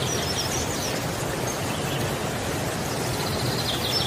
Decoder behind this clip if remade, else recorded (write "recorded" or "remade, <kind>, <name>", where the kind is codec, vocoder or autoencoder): recorded